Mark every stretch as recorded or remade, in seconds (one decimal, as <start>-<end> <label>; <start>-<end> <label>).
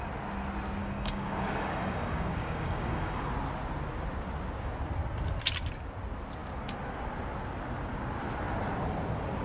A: 0.0-0.8 recorded; 0.8-3.3 remade; 3.3-9.4 recorded